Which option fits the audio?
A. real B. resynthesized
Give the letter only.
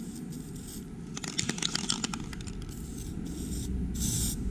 A